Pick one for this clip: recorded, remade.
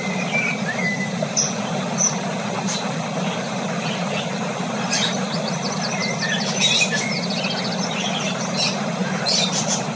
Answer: recorded